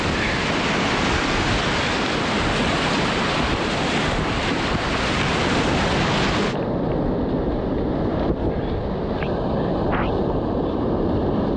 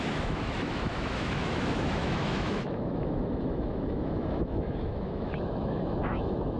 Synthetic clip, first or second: second